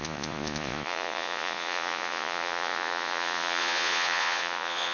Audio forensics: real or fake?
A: fake